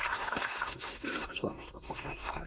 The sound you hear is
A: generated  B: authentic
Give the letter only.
A